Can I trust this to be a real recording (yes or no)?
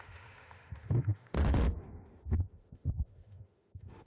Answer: no